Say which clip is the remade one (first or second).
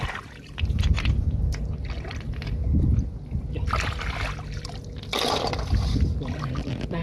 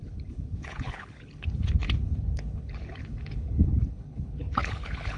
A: second